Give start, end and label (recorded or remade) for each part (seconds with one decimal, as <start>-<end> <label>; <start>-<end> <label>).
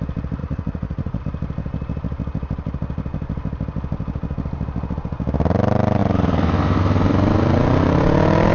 0.0-0.4 recorded; 0.4-1.2 remade; 1.2-8.5 recorded